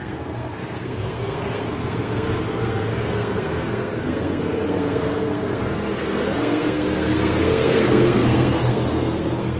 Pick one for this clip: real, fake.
fake